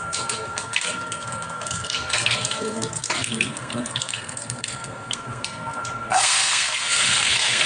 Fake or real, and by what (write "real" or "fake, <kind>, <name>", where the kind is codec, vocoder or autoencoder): fake, codec, SNAC